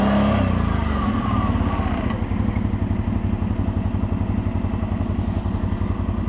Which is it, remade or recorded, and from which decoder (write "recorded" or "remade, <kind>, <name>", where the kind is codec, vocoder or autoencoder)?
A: recorded